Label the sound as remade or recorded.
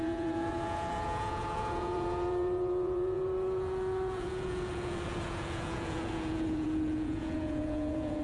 remade